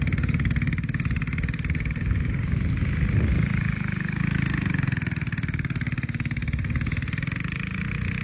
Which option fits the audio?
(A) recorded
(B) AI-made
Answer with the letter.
A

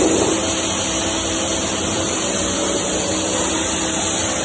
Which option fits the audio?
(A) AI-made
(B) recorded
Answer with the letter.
B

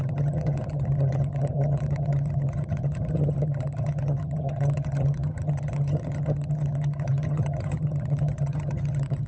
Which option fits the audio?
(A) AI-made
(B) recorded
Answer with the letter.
A